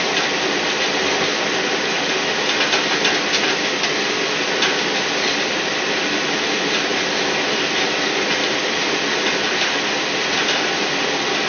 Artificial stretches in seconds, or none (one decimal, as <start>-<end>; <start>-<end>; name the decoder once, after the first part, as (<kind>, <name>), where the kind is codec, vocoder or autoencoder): none